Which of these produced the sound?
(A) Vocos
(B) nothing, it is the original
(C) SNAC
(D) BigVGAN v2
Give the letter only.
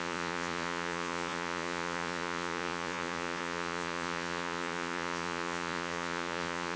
A